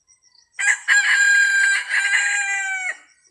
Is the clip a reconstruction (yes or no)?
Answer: no